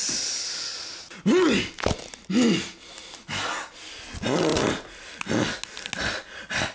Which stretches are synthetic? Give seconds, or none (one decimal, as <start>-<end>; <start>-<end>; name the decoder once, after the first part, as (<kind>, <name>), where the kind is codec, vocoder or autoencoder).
none

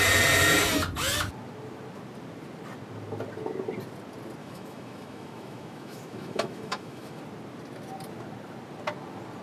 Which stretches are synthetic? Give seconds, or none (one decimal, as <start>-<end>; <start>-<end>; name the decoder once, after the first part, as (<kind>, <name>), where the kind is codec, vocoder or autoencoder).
4.4-7.2 (autoencoder, DAC-VAE)